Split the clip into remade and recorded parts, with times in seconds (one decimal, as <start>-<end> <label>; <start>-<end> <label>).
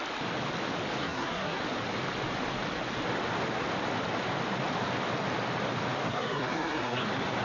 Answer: 0.0-1.0 recorded; 1.0-1.6 remade; 1.6-6.1 recorded; 6.1-7.0 remade; 7.0-7.4 recorded